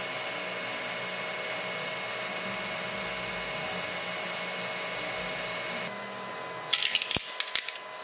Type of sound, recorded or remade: recorded